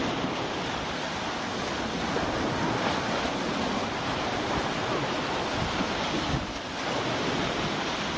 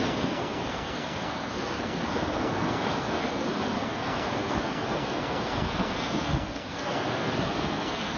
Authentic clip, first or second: first